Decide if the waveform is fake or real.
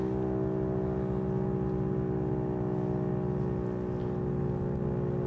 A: real